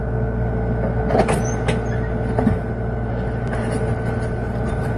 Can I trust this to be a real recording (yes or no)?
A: yes